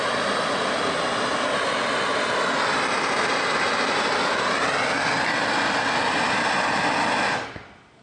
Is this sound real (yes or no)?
yes